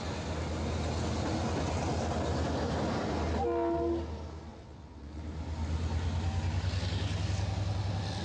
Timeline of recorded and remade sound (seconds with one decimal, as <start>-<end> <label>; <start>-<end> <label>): 0.0-4.5 recorded; 4.5-5.2 remade; 5.2-8.2 recorded